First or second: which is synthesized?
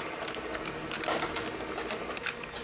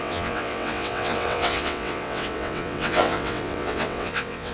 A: second